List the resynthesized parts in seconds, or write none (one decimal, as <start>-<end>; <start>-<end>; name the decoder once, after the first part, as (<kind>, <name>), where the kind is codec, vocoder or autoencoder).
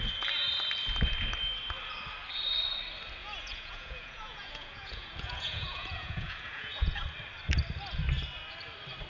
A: 3.2-7.0 (vocoder, Vocos)